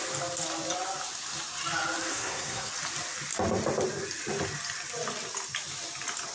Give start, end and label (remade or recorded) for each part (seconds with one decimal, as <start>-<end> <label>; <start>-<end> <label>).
0.0-2.1 recorded; 2.1-2.7 remade; 2.7-6.3 recorded